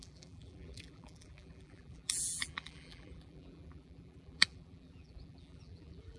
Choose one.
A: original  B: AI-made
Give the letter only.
B